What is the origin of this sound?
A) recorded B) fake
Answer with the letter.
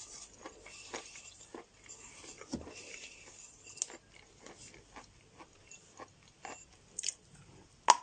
A